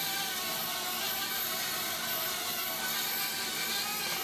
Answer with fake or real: real